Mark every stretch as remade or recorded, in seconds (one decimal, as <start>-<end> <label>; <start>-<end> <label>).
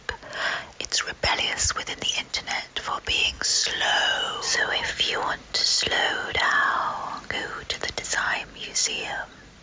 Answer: 0.0-6.2 recorded; 6.2-6.8 remade; 6.8-9.6 recorded